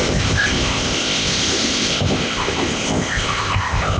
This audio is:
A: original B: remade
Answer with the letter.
B